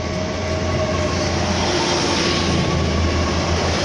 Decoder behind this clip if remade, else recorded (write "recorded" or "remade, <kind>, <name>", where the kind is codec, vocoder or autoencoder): recorded